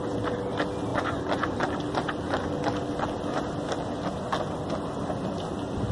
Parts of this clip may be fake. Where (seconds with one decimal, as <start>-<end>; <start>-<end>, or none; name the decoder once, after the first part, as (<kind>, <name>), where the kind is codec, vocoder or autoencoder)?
0.9-1.5 (vocoder, Vocos)